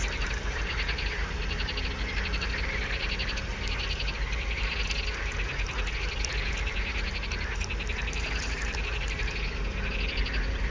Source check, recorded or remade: recorded